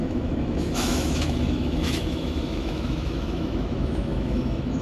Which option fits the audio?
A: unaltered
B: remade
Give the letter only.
B